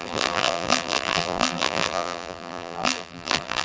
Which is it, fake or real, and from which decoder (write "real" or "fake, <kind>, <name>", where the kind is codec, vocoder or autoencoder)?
fake, vocoder, BigVGAN v2